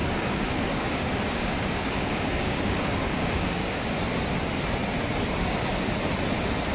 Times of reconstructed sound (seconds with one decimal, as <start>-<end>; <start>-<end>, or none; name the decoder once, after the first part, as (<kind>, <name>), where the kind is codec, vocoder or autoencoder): 0.0-4.0 (codec, DAC)